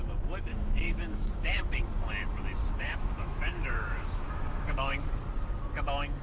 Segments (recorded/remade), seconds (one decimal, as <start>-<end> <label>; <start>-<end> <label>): 0.0-0.5 recorded; 0.5-1.8 remade; 1.8-2.6 recorded; 2.6-5.1 remade; 5.1-6.2 recorded